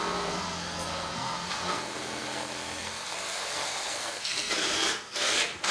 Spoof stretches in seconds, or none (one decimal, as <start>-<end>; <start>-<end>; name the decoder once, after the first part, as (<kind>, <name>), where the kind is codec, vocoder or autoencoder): 0.0-5.7 (codec, SNAC)